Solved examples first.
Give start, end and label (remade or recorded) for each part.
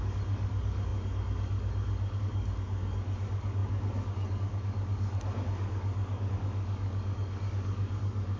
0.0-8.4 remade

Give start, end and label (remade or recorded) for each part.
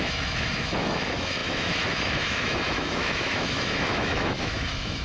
0.0-5.0 remade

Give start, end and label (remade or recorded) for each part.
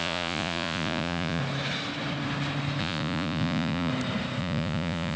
0.0-1.4 remade; 1.4-2.8 recorded; 2.8-3.9 remade; 3.9-4.4 recorded; 4.4-5.2 remade